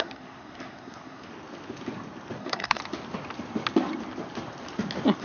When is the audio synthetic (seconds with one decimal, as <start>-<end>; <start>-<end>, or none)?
0.0-1.3; 2.4-2.8